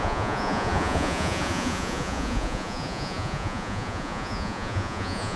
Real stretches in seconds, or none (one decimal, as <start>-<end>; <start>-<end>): none